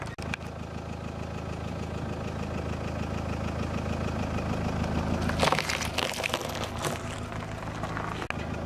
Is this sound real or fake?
real